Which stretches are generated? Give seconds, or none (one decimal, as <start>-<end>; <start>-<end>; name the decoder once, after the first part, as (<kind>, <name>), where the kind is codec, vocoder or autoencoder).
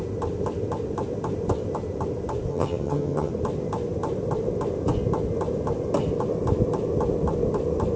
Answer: 2.5-3.3 (vocoder, HiFi-GAN)